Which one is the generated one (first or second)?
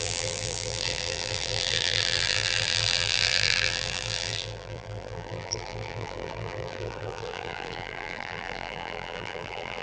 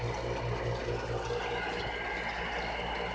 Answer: first